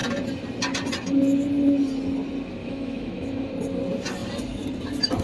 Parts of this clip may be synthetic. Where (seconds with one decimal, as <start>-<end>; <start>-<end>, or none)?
2.6-3.5